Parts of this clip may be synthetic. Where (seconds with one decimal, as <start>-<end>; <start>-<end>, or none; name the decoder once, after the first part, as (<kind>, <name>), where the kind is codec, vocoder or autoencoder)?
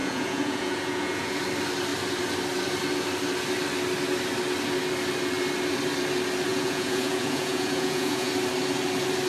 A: 0.0-1.4 (vocoder, Vocos); 6.5-8.3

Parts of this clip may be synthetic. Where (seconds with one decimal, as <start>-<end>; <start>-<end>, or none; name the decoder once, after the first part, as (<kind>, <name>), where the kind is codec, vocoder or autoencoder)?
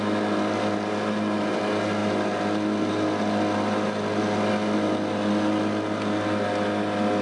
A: none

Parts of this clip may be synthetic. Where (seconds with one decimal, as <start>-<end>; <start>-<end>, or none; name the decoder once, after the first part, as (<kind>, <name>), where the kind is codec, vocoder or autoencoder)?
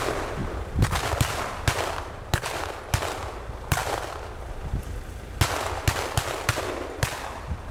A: none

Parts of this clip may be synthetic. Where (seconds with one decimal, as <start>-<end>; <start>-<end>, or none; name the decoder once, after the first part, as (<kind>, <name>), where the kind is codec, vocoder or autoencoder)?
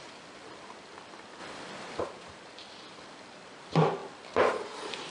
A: none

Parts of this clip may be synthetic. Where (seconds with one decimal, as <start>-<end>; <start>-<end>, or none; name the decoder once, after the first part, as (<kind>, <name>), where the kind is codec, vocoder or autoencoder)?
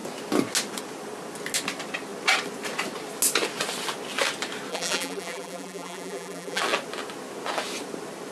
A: 4.7-6.6 (vocoder, BigVGAN v2)